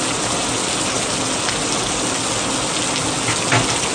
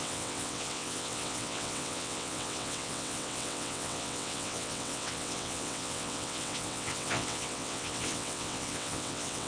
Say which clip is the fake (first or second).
second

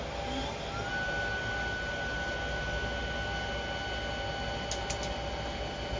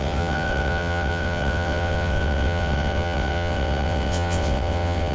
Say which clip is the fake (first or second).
second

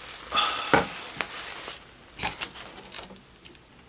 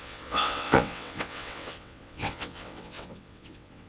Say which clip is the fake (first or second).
second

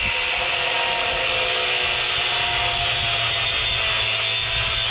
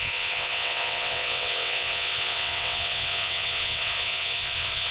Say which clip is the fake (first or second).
second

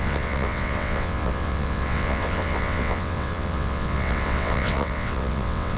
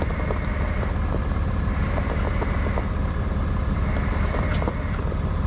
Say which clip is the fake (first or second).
first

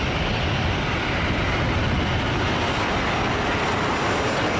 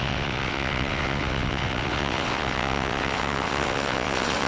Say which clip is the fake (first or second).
second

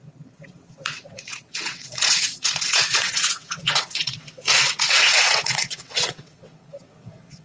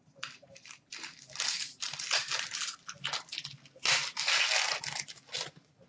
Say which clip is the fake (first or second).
first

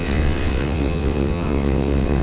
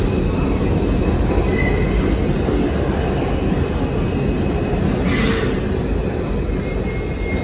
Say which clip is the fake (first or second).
first